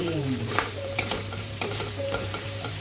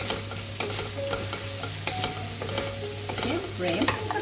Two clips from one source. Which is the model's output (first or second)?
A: first